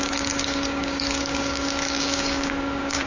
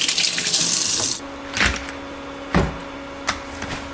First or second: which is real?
second